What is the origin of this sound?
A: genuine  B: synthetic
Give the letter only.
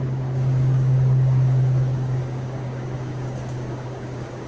B